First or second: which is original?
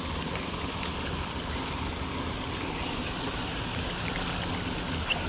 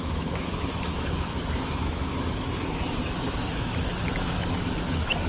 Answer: first